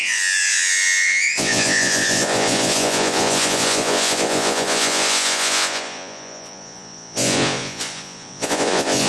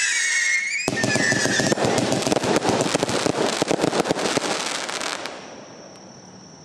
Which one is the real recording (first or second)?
second